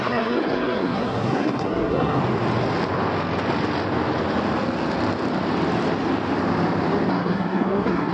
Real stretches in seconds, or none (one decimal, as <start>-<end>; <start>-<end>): 2.2-7.1